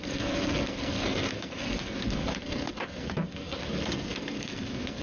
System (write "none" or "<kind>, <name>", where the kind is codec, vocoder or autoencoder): codec, SNAC